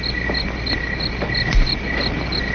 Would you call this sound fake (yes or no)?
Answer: no